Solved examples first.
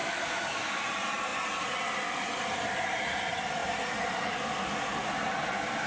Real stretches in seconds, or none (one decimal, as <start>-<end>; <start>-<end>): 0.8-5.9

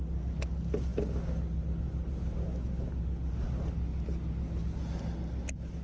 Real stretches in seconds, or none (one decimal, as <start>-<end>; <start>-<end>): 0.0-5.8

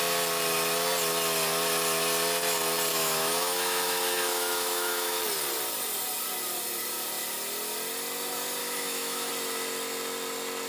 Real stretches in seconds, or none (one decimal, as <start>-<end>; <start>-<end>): 0.0-2.9; 5.2-8.6; 9.3-10.7

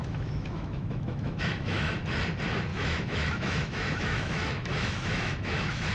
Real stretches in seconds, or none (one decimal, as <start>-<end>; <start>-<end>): 1.9-2.7

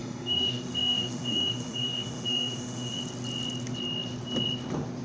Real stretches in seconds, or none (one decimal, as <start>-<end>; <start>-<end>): 3.0-5.0

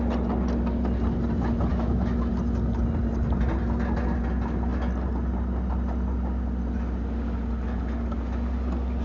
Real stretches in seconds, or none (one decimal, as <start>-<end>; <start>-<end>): 0.0-1.7; 2.3-9.0

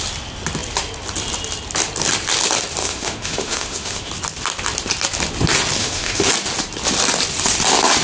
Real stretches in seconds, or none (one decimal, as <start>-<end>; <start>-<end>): 0.0-2.8; 4.1-5.8; 6.3-8.0

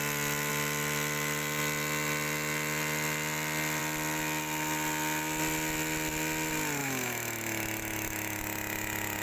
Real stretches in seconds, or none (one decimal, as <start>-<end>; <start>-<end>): 0.0-6.8; 8.4-9.2